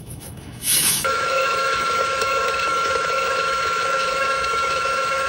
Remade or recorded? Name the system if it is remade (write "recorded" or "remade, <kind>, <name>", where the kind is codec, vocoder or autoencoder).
remade, autoencoder, DAC-VAE